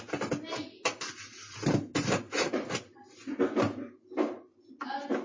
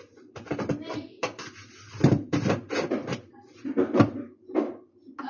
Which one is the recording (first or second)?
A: first